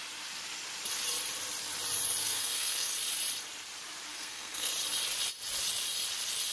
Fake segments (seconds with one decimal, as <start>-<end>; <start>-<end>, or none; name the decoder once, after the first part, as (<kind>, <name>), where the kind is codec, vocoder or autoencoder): 2.2-2.9 (codec, SNAC); 4.1-4.7